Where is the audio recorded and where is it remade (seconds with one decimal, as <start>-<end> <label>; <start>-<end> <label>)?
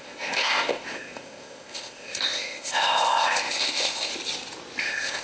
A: 0.0-4.1 remade; 4.1-4.8 recorded; 4.8-5.2 remade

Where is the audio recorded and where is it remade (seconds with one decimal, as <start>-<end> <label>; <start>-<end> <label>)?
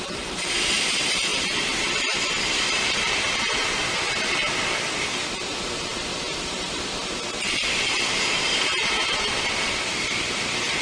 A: 0.0-4.4 remade; 4.4-5.5 recorded; 5.5-10.8 remade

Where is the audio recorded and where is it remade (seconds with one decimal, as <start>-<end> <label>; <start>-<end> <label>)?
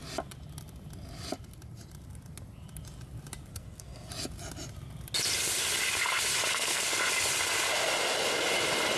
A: 0.0-3.5 recorded; 3.5-4.1 remade; 4.1-6.5 recorded; 6.5-7.1 remade; 7.1-9.0 recorded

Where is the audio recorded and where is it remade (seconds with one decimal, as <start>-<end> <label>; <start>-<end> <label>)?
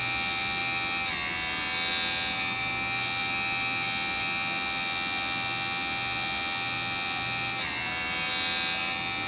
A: 0.0-9.3 recorded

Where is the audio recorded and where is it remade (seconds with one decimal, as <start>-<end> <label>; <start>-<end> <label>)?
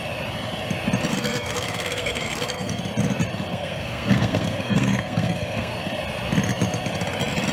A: 0.0-1.1 recorded; 1.1-2.8 remade; 2.8-3.5 recorded; 3.5-5.7 remade; 5.7-7.5 recorded